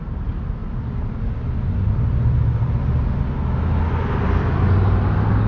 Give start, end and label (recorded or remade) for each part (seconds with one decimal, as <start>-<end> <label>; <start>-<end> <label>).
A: 0.0-5.5 recorded

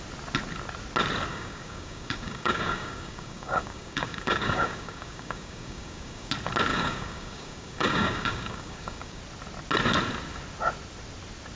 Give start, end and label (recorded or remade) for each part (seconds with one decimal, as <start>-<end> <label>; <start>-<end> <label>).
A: 0.0-1.3 recorded; 1.3-6.3 remade; 6.3-6.7 recorded; 6.7-9.2 remade; 9.2-11.6 recorded

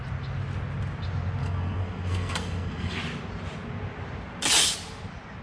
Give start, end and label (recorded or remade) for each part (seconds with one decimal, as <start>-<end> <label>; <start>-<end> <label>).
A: 0.0-1.4 recorded; 1.4-3.0 remade; 3.0-5.4 recorded

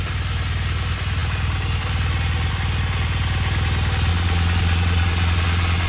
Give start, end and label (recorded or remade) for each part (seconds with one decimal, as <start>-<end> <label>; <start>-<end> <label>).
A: 0.0-4.1 recorded; 4.1-5.9 remade

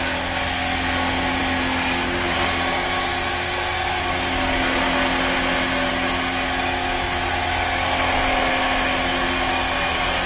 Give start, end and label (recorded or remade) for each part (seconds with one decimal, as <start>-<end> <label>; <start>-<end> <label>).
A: 0.0-10.3 recorded